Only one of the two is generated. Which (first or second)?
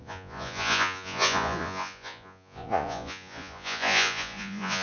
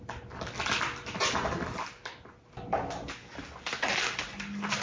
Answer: first